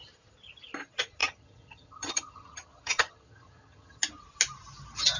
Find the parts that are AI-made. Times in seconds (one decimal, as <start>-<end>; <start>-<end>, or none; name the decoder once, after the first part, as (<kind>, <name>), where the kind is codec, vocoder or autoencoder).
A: 1.2-4.0 (vocoder, HiFi-GAN)

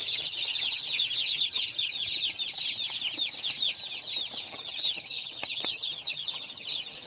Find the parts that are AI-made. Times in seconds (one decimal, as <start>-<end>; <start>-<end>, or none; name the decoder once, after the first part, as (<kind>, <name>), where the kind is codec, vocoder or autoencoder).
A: 0.0-2.0 (vocoder, HiFi-GAN); 4.5-7.1

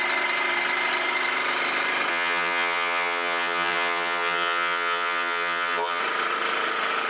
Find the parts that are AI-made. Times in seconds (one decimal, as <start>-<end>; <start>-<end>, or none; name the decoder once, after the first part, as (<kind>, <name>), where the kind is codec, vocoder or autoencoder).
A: 2.1-6.0 (vocoder, HiFi-GAN)

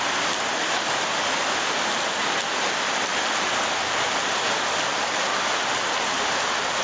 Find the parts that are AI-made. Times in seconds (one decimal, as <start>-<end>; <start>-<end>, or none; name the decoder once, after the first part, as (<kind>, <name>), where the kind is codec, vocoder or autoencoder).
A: none

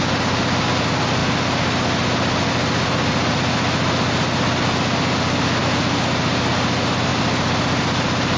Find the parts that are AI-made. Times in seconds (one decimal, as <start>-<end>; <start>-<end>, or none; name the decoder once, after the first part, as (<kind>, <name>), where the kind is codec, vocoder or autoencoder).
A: none

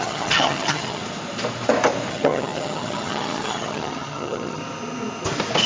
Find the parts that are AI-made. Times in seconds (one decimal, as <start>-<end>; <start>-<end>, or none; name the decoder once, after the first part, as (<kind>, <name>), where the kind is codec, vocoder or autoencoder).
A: 0.0-1.0 (vocoder, HiFi-GAN); 2.1-4.6